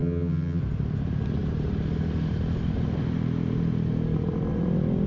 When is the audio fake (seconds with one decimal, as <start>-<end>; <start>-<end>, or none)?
0.0-0.6